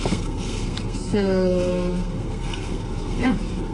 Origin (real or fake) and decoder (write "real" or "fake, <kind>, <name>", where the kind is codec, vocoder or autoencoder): fake, codec, SNAC